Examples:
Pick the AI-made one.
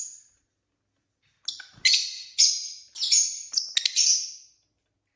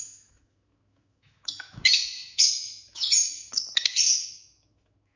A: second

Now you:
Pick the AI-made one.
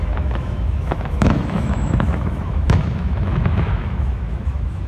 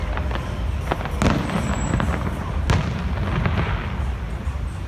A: first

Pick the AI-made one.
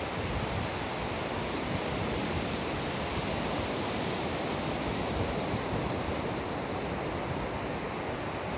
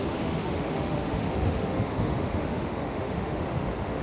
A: second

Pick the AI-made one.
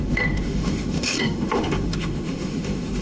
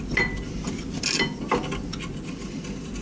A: first